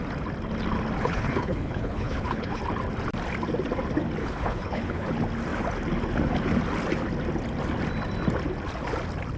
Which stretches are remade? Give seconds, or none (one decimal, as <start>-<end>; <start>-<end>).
1.0-2.6; 4.2-5.1